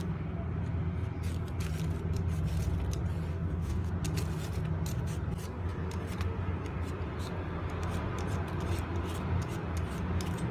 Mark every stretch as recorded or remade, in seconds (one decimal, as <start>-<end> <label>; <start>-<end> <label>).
0.0-3.3 recorded; 3.3-3.9 remade; 3.9-10.5 recorded